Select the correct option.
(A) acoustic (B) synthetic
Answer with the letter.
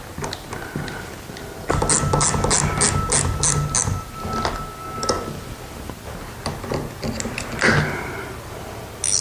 A